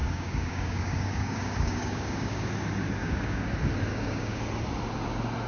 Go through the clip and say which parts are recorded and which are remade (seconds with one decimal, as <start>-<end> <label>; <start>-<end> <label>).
0.0-2.5 remade; 2.5-3.0 recorded; 3.0-3.5 remade; 3.5-3.9 recorded; 3.9-4.4 remade; 4.4-5.5 recorded